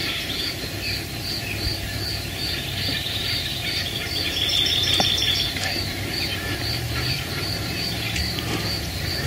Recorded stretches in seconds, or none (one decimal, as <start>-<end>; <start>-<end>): none

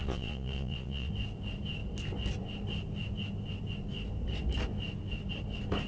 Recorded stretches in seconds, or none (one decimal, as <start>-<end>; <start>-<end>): 1.1-5.9

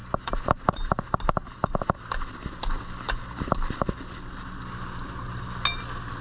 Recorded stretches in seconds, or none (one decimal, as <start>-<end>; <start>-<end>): 0.9-6.2

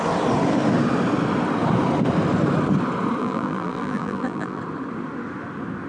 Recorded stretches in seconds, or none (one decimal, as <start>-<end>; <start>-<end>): 0.0-3.2; 4.6-5.9

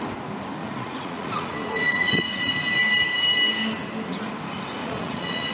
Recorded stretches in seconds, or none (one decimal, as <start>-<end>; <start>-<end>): 0.0-0.6; 2.5-4.8